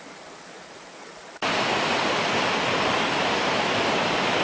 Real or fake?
real